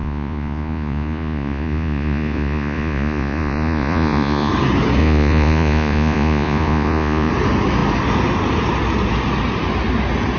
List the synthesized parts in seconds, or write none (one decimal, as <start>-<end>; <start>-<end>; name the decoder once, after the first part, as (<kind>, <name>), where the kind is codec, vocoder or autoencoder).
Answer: 0.0-4.5 (vocoder, Vocos); 5.0-7.3